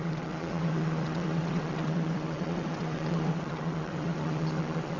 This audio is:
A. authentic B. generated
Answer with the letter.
B